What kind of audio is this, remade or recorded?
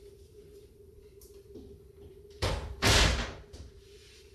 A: remade